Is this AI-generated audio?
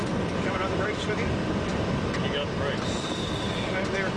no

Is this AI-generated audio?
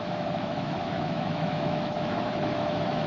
yes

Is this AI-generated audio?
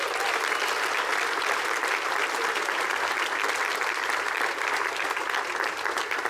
yes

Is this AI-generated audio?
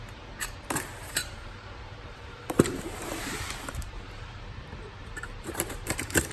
yes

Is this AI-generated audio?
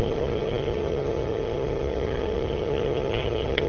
yes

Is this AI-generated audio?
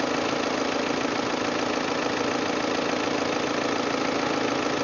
no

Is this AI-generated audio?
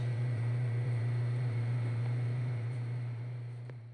yes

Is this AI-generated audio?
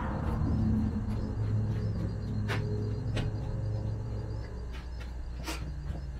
no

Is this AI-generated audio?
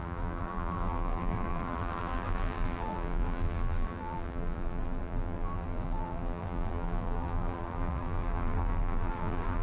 yes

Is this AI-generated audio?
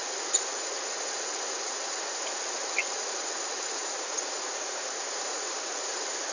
yes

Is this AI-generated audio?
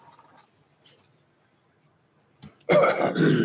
no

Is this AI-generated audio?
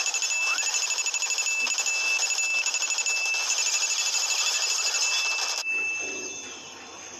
no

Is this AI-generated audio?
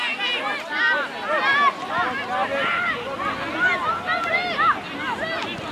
no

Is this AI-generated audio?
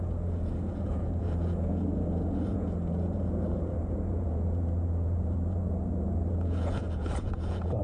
yes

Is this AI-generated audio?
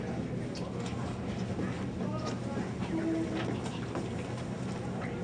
no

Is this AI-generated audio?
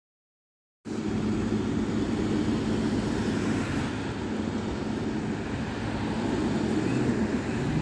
no